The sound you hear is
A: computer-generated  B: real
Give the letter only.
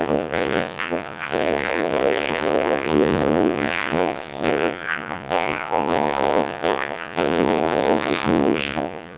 A